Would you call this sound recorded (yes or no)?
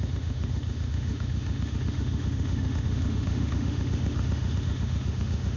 no